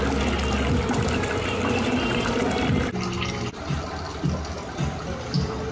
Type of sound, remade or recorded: recorded